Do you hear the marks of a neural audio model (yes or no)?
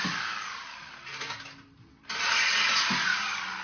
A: no